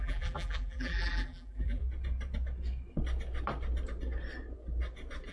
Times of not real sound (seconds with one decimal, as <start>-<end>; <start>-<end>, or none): 0.0-1.8